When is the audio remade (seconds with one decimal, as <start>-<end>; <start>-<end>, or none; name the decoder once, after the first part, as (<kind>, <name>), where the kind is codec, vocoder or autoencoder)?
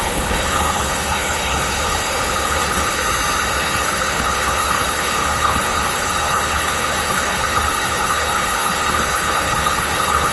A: 0.0-3.0 (codec, HILCodec); 3.6-10.3